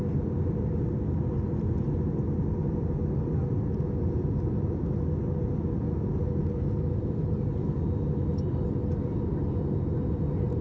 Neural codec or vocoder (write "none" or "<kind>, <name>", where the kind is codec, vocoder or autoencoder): none